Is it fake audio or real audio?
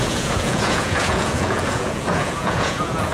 fake